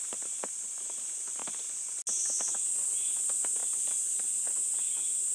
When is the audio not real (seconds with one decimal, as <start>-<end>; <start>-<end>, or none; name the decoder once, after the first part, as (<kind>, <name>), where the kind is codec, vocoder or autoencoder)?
none